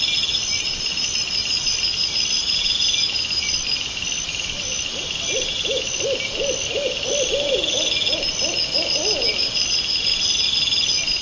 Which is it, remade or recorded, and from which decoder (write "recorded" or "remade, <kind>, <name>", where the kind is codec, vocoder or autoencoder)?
recorded